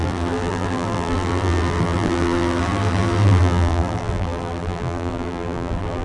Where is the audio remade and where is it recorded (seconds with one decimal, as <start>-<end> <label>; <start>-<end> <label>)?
0.0-6.0 remade